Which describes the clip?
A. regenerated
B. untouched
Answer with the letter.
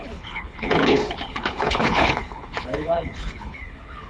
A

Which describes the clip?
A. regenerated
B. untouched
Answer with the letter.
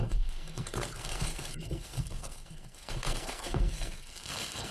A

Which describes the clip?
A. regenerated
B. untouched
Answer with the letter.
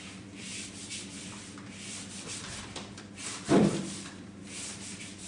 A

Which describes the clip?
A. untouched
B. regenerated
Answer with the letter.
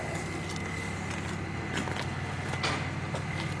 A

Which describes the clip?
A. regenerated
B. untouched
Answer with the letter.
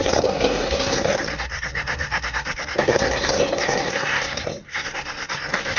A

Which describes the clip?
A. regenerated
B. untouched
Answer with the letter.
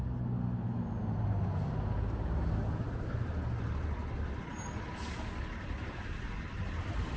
B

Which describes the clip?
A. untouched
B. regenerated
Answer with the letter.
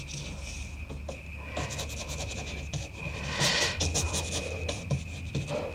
A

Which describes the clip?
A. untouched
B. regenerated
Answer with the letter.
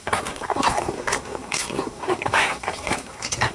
B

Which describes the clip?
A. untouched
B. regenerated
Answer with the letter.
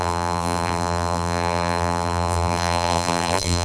B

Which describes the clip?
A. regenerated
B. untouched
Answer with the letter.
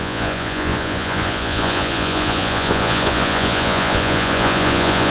A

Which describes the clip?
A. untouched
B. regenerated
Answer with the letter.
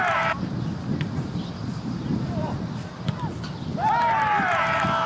A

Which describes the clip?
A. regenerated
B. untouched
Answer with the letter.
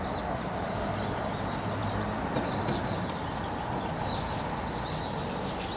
B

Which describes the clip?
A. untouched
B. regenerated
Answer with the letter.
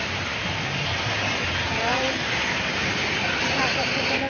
B